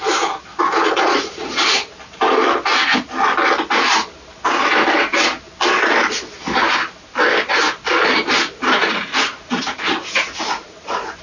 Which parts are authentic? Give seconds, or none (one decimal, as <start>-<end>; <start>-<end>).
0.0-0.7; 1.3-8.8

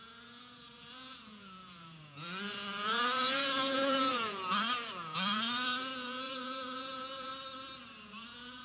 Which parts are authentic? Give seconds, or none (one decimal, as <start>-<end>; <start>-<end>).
7.3-8.0

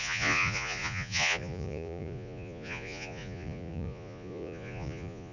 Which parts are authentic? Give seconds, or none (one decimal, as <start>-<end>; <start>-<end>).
none

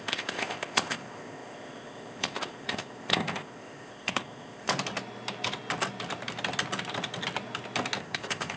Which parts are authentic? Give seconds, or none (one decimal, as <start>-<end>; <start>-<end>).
4.7-8.0

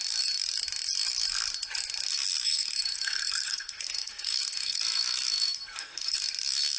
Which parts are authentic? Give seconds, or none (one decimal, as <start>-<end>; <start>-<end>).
0.0-2.1; 6.2-6.8